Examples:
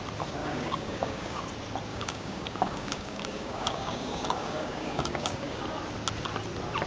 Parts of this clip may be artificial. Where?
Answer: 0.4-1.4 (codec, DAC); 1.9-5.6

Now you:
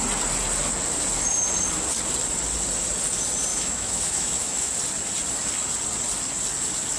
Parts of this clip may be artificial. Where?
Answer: 3.5-4.7 (autoencoder, DAC-VAE)

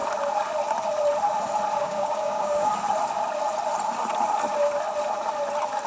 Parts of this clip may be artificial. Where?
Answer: 1.8-2.7 (codec, DAC)

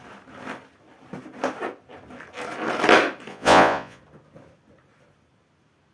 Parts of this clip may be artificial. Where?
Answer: 3.3-4.0 (vocoder, Vocos)

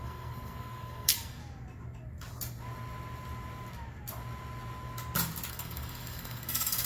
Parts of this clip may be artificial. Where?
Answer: 0.0-1.4 (codec, SNAC); 5.5-6.9

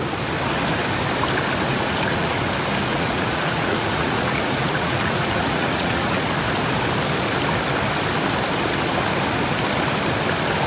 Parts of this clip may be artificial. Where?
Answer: 1.7-2.4 (vocoder, Vocos); 2.9-6.3

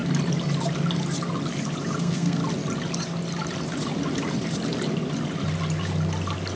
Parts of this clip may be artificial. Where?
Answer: 2.0-2.4 (codec, SNAC)